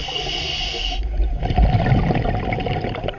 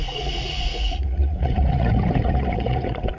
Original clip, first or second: first